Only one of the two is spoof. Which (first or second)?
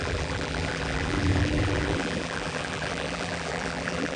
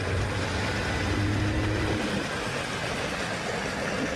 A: first